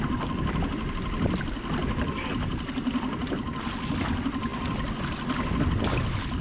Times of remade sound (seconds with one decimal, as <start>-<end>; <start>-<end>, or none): none